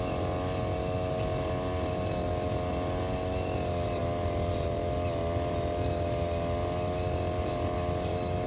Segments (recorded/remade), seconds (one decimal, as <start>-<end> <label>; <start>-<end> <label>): 0.0-8.5 recorded